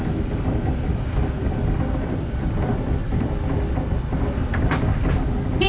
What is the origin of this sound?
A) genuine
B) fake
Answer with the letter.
A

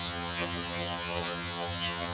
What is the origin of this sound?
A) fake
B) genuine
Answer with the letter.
A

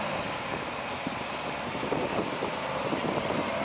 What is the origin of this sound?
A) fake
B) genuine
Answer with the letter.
B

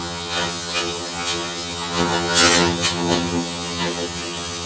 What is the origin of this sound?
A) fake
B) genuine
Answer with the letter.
A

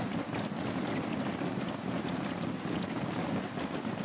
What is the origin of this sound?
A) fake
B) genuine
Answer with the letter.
B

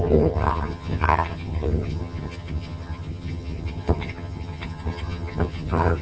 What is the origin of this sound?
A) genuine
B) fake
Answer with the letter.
B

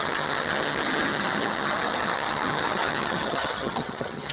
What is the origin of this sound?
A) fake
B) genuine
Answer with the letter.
A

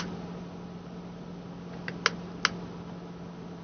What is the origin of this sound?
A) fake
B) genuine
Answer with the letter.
B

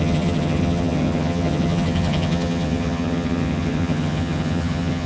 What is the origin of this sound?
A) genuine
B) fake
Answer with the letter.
B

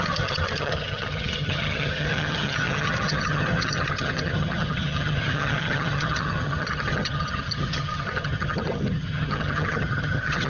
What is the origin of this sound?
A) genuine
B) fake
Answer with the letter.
B